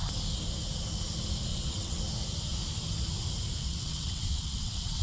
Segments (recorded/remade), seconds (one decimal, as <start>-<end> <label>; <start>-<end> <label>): 0.0-1.5 recorded; 1.5-2.0 remade; 2.0-3.6 recorded; 3.6-5.0 remade